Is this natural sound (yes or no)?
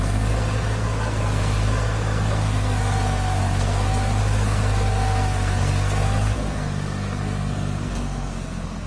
no